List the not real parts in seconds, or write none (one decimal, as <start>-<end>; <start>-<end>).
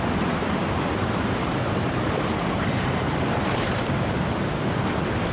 0.6-3.8